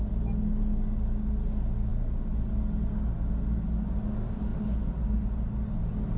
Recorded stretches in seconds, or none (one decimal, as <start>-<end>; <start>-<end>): 0.0-6.2

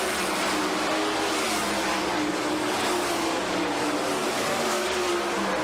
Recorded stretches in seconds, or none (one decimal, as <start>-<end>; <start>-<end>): 0.0-1.9; 5.1-5.6

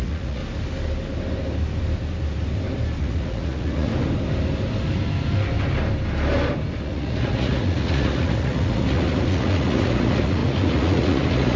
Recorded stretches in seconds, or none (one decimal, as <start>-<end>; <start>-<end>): 0.4-3.0; 3.9-6.8